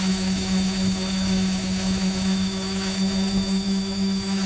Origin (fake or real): fake